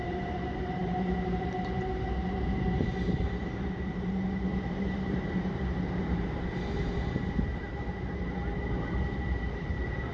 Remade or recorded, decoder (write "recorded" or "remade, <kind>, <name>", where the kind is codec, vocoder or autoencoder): remade, vocoder, BigVGAN v2